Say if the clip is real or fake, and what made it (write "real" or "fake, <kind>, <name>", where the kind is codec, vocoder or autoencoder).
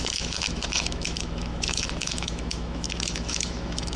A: fake, autoencoder, DAC-VAE